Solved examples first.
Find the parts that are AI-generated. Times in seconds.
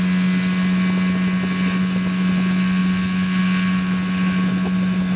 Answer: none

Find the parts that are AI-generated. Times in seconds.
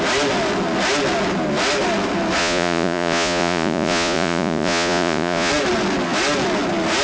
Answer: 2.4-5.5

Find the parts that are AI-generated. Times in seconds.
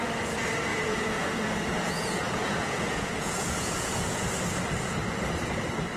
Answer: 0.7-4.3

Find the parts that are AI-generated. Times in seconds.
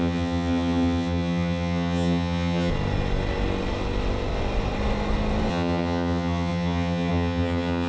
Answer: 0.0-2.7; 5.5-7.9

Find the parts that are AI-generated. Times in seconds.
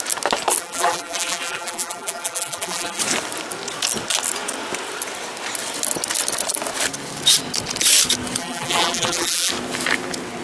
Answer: 0.6-3.0; 8.4-9.5